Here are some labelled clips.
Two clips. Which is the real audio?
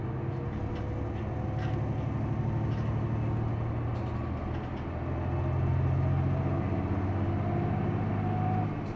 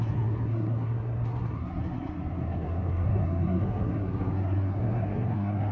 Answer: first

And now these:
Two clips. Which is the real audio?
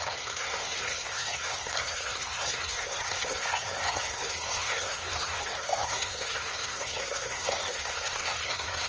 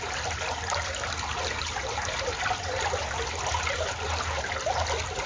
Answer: second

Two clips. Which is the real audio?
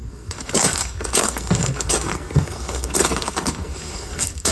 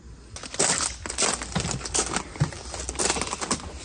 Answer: second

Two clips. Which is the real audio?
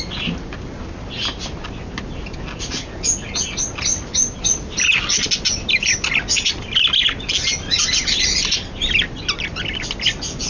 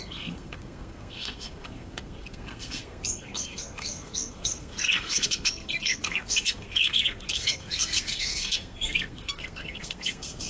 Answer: first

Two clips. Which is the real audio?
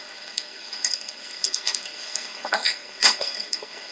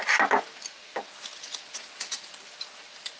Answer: second